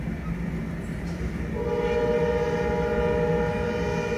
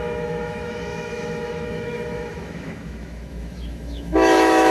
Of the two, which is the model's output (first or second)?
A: second